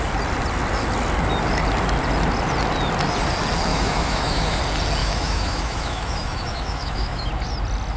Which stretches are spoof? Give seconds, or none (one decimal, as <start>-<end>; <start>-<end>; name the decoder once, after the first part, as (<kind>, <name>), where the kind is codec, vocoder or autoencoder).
3.7-4.6 (autoencoder, DAC-VAE); 5.0-7.3